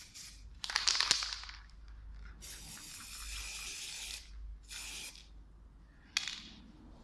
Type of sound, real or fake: real